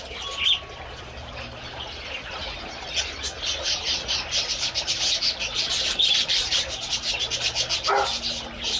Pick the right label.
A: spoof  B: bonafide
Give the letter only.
B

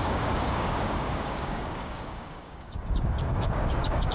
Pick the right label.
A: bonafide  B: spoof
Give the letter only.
B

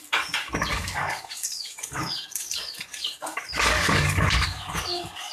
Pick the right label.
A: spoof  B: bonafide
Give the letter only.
A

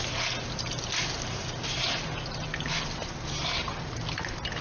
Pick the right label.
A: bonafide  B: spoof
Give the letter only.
A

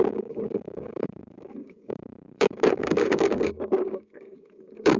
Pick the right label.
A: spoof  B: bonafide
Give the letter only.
A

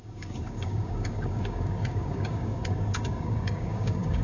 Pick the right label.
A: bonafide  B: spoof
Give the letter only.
B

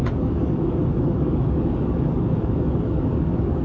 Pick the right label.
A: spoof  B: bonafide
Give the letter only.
A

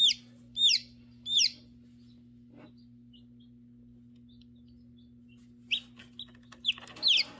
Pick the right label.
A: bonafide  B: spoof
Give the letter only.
A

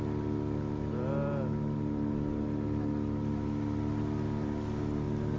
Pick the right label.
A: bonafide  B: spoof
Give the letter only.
A